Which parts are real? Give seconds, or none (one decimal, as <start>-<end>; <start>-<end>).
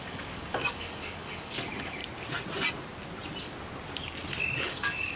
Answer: 2.0-4.6